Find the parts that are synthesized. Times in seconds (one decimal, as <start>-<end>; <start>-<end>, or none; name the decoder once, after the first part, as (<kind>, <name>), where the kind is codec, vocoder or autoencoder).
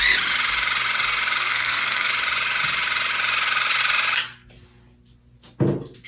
1.4-2.1 (codec, SNAC)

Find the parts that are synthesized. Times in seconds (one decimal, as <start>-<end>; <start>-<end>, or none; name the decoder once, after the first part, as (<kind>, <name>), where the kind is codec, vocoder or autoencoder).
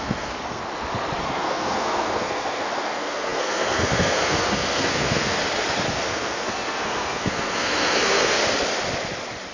0.0-0.6 (codec, SNAC); 1.2-5.4; 5.9-8.4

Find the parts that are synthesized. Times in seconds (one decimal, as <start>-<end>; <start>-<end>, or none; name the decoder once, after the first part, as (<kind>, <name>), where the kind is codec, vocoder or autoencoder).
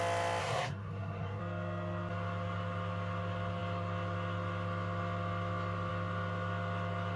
0.4-1.4 (codec, SNAC)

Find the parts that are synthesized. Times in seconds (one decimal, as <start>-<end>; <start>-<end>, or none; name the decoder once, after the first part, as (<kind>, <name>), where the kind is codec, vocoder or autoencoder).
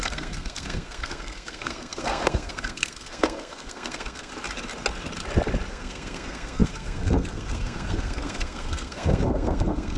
0.0-4.3 (codec, SNAC); 5.7-10.0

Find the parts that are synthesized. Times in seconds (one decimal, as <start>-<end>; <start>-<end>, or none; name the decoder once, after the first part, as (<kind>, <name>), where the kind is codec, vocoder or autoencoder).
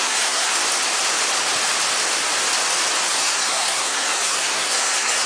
0.0-0.5 (codec, SNAC); 3.1-5.3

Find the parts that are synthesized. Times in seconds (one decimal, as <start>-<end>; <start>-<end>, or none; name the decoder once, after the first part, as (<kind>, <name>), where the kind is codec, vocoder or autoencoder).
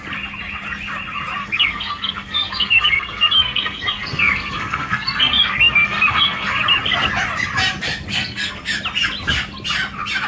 1.4-6.6 (codec, SNAC); 8.1-8.7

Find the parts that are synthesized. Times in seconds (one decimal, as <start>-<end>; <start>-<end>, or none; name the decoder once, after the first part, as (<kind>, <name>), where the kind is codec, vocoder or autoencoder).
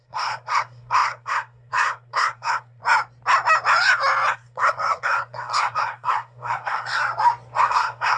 0.0-2.8 (codec, SNAC); 4.3-7.0; 7.6-8.2